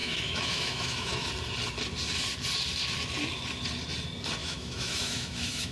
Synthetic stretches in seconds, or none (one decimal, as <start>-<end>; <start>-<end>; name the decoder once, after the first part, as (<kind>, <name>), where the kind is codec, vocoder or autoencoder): 0.0-1.3 (autoencoder, DAC-VAE); 4.4-5.7